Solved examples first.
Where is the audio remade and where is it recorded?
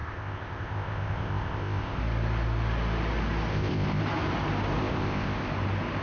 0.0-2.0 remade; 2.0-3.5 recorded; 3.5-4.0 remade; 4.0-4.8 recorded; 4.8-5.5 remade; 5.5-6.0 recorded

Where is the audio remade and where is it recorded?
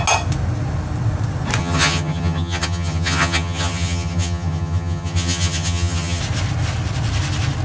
0.0-1.6 recorded; 1.6-6.2 remade; 6.2-7.6 recorded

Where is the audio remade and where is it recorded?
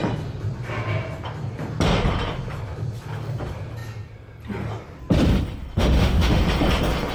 0.0-5.8 recorded; 5.8-6.4 remade; 6.4-7.1 recorded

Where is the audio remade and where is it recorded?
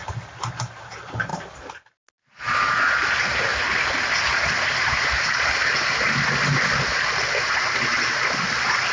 0.0-8.9 recorded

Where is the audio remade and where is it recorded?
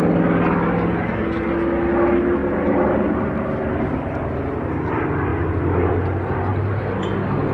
0.0-2.4 recorded; 2.4-3.1 remade; 3.1-6.5 recorded; 6.5-7.1 remade; 7.1-7.5 recorded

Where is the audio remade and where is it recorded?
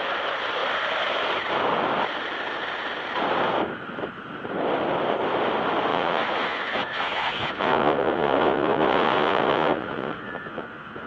0.0-5.9 recorded; 5.9-11.1 remade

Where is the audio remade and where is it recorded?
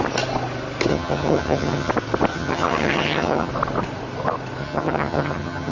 0.0-0.9 recorded; 0.9-1.9 remade; 1.9-2.3 recorded; 2.3-3.5 remade; 3.5-4.6 recorded; 4.6-5.7 remade